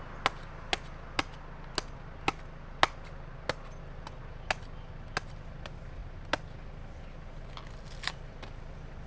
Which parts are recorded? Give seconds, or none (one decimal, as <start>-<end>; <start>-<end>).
0.0-9.1